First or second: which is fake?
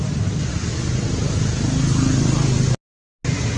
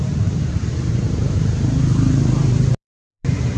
second